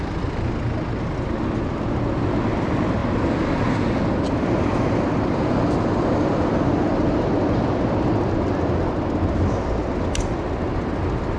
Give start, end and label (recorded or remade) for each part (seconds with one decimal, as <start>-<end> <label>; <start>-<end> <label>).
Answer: 0.0-11.4 recorded